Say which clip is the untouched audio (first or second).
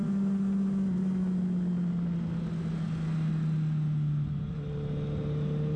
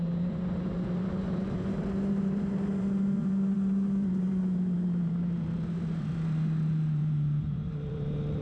first